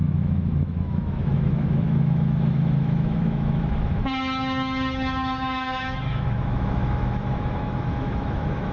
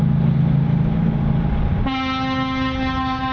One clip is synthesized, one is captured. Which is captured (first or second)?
second